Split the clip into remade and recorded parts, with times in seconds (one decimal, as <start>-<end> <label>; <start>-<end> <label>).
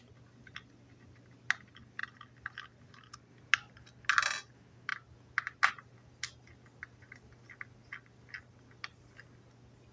0.0-9.9 recorded